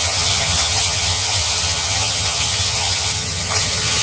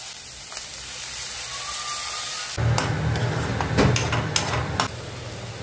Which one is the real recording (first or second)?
second